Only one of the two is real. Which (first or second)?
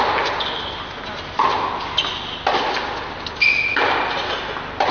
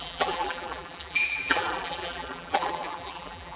first